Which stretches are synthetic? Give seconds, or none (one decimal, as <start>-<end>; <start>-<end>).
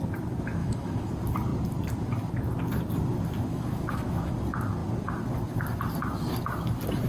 0.6-1.1; 3.5-4.3